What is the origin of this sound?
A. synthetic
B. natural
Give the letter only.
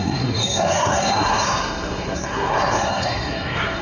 A